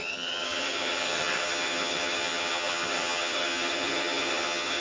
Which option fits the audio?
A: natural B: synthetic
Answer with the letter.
B